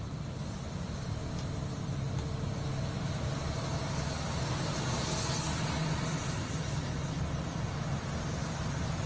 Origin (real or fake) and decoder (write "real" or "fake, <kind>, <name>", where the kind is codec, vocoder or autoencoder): real